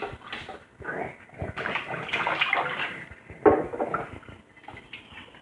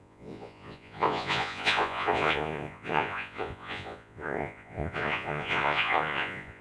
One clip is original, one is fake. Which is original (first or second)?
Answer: first